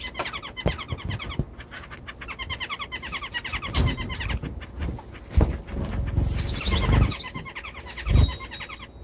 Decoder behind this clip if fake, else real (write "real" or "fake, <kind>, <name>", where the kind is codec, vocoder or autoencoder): real